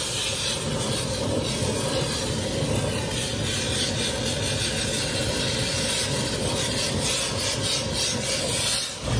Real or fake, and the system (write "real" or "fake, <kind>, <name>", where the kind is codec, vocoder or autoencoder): real